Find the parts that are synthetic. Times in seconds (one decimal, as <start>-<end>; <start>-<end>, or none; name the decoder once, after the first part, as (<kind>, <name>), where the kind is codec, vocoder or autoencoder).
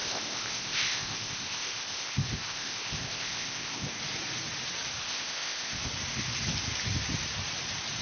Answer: 0.0-4.0 (codec, ZipCodec); 5.0-5.9